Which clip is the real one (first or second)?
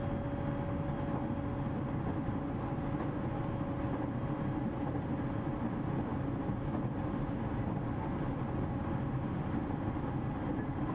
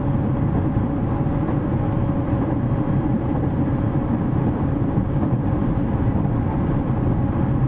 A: first